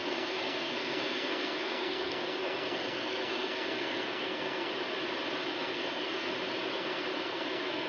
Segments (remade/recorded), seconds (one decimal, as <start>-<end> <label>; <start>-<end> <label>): 0.0-4.7 remade; 4.7-5.5 recorded; 5.5-6.3 remade; 6.3-6.7 recorded; 6.7-7.9 remade